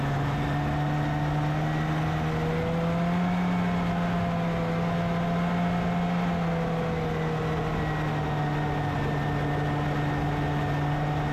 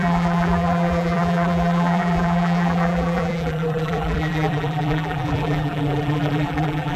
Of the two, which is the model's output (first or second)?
second